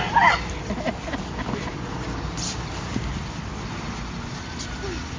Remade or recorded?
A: remade